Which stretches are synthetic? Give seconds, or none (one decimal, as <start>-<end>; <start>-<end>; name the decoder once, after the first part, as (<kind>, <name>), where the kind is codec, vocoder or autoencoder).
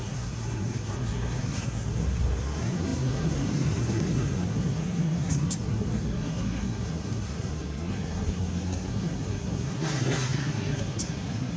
0.0-11.6 (codec, SNAC)